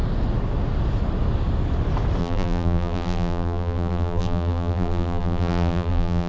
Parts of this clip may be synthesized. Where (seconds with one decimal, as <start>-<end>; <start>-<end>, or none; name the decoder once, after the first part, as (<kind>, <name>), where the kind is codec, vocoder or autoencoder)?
2.2-6.3 (vocoder, BigVGAN v2)